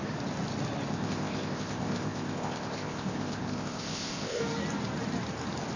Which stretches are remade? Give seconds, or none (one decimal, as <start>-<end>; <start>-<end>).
0.9-4.4